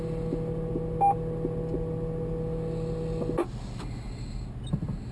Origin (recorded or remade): recorded